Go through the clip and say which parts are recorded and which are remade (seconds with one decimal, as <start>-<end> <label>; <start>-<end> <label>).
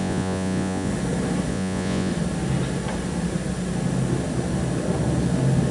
0.0-0.9 remade; 0.9-1.5 recorded; 1.5-2.1 remade; 2.1-5.7 recorded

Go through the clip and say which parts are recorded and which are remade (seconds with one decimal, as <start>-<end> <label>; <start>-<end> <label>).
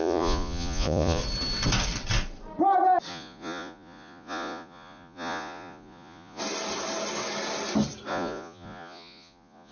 0.0-1.2 remade; 1.2-3.1 recorded; 3.1-6.4 remade; 6.4-8.1 recorded; 8.1-9.7 remade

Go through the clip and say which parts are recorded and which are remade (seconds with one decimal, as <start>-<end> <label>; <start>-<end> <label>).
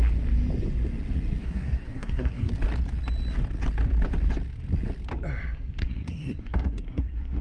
0.0-1.4 recorded; 1.4-2.5 remade; 2.5-5.8 recorded; 5.8-7.4 remade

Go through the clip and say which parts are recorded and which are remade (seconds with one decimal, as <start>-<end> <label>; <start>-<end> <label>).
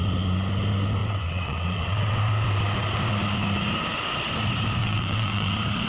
0.0-1.0 recorded; 1.0-2.2 remade; 2.2-4.8 recorded; 4.8-5.5 remade; 5.5-5.9 recorded